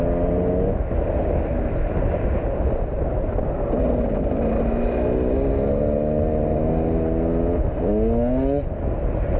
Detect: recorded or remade recorded